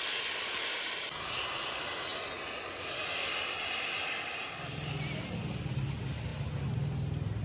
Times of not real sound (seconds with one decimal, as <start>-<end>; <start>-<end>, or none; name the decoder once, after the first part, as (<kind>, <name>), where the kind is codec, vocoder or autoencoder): none

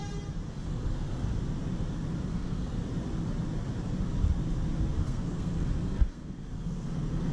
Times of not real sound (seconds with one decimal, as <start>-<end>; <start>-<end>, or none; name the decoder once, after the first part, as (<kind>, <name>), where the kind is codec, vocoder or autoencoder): 0.5-1.3 (codec, SNAC); 2.3-2.8; 5.0-7.3

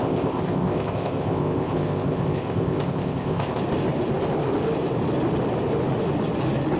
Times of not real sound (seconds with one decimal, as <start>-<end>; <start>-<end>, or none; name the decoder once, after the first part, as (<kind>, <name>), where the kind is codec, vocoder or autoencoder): 0.0-3.6 (codec, ZipCodec)

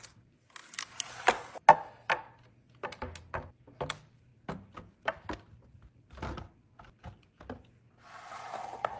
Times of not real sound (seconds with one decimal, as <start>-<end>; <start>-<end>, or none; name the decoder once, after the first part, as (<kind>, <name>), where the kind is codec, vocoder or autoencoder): none

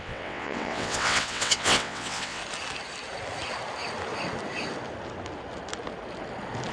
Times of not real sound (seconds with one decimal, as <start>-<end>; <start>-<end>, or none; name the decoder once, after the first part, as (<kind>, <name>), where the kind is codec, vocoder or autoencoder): 0.0-2.4 (vocoder, WaveNeXt)

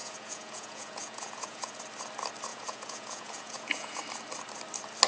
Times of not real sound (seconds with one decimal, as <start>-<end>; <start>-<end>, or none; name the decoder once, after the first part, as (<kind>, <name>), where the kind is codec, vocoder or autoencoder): 0.0-1.8 (vocoder, Vocos); 2.5-4.0

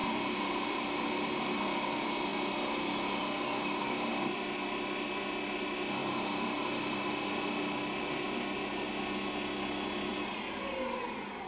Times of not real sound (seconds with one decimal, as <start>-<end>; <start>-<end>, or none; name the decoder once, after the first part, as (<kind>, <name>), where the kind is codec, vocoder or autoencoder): 0.0-1.4 (vocoder, BigVGAN v2); 2.3-3.2; 6.0-7.1